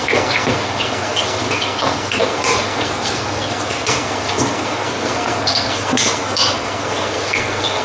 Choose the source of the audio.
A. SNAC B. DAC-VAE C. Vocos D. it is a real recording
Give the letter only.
A